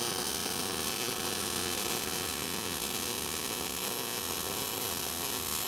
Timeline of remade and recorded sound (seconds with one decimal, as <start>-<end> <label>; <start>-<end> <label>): 0.0-5.7 recorded